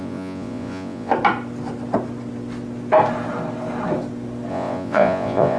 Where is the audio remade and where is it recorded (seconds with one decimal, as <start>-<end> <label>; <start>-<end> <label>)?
0.0-1.1 remade; 1.1-4.5 recorded; 4.5-5.6 remade